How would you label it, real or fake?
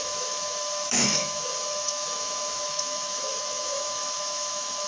fake